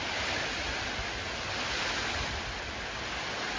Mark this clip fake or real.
real